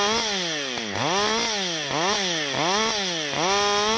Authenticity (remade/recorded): recorded